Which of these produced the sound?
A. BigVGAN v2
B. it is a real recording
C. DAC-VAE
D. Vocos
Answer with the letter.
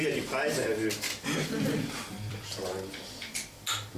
A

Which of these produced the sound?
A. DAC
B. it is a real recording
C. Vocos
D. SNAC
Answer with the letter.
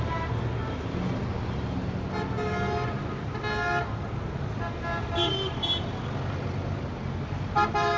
B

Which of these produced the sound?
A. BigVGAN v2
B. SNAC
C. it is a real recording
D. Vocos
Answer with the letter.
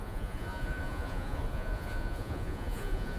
D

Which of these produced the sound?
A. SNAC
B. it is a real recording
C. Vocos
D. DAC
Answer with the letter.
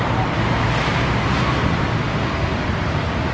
B